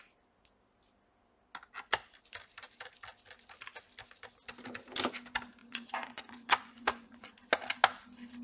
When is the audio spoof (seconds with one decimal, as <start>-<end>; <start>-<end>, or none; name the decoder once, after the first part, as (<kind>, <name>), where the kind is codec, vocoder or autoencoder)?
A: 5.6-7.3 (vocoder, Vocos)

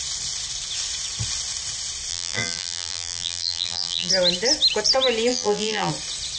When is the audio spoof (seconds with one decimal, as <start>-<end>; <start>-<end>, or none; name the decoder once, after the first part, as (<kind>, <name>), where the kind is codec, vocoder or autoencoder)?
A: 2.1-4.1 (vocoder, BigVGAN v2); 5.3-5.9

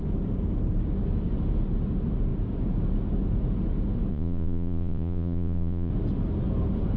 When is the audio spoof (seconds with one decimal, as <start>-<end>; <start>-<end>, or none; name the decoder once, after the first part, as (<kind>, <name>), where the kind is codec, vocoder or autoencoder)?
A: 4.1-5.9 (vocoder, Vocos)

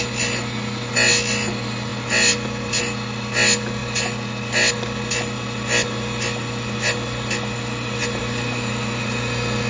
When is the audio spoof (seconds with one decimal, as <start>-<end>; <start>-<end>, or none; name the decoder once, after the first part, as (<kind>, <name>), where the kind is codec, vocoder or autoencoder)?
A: none

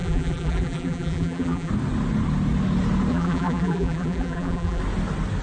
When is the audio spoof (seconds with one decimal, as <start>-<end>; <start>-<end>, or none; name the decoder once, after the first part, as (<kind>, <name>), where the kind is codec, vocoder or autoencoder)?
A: 0.0-1.7 (vocoder, BigVGAN v2); 3.1-4.8

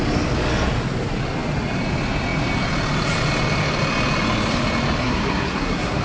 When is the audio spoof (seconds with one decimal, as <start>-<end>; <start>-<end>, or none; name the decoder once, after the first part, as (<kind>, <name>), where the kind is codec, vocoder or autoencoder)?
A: 5.0-6.0 (codec, SNAC)

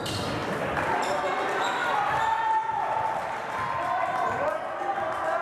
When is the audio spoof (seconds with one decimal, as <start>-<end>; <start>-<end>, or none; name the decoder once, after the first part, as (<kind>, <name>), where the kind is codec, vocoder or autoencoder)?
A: 1.8-4.8 (vocoder, BigVGAN v2)

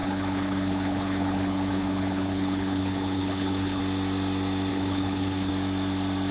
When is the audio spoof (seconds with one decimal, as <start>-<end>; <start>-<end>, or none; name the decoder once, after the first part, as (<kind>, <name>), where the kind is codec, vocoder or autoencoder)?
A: 0.0-3.8 (codec, HILCodec); 4.7-5.5